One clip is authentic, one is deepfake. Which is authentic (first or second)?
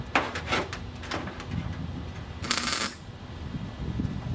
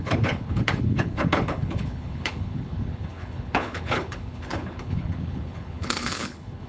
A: first